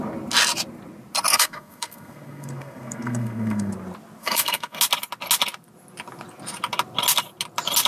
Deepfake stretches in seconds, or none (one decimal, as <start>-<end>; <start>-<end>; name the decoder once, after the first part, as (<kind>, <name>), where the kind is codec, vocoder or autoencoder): 1.3-3.7 (codec, SNAC); 4.2-4.8

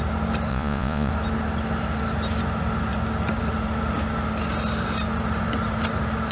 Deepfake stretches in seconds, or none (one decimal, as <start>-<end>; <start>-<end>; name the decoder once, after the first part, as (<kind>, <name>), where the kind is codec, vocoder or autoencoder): 0.5-1.1 (vocoder, Vocos)

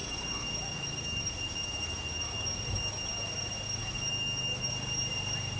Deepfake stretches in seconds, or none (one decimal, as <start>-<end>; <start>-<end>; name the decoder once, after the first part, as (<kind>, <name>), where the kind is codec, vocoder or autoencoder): 0.0-3.4 (autoencoder, DAC-VAE); 3.8-4.7

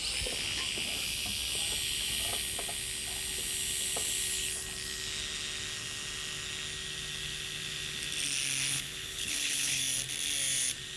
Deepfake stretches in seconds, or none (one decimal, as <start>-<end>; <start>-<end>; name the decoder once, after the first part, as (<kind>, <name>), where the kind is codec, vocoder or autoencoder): 8.7-9.8 (codec, HILCodec)

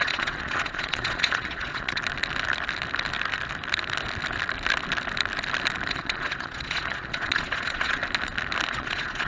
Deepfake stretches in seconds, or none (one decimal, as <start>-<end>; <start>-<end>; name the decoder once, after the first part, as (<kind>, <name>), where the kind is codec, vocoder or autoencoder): 0.0-2.0 (vocoder, Vocos); 5.9-8.0; 8.7-9.3

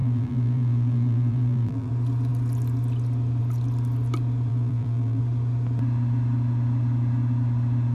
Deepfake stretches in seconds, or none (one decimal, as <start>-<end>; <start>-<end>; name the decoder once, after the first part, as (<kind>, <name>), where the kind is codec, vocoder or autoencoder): 0.0-1.9 (vocoder, BigVGAN v2); 4.5-5.2